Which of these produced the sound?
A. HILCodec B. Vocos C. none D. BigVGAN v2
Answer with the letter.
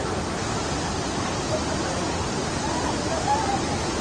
C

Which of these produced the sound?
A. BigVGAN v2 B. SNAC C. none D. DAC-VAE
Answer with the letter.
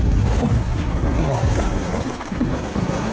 B